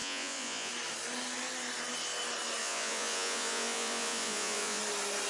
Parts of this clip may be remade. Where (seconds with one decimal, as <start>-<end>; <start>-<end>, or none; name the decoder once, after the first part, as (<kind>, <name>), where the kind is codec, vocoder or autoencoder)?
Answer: 0.0-0.7 (vocoder, Vocos); 2.6-4.8